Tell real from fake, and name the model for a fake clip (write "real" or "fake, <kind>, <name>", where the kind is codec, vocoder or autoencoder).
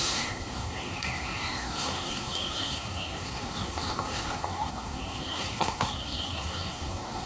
fake, codec, SNAC